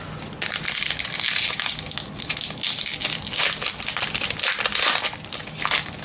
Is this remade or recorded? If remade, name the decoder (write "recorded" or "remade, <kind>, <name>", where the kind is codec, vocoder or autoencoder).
recorded